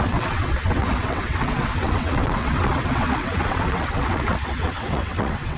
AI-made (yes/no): yes